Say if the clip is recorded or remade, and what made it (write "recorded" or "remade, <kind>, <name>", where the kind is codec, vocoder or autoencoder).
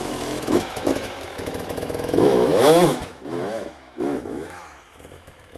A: remade, autoencoder, DAC-VAE